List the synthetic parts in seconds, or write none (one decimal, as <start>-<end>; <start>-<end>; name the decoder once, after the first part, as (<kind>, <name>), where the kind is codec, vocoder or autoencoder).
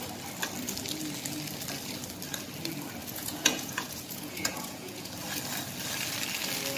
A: 3.0-5.1 (vocoder, Vocos)